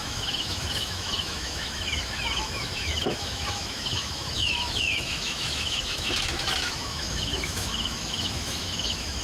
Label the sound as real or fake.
fake